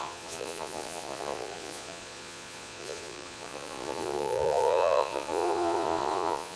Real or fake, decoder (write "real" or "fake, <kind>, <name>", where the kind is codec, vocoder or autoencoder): fake, vocoder, Vocos